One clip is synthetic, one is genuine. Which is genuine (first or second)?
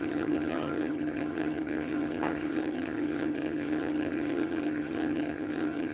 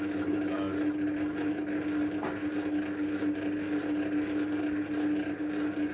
second